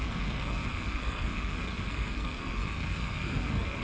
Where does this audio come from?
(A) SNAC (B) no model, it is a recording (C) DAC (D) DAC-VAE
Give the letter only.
A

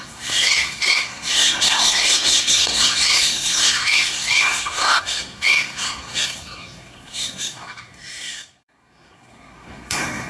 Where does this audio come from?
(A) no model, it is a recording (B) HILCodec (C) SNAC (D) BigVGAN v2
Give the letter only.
C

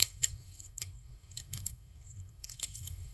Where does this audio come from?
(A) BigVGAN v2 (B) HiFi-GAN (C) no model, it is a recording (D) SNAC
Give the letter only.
D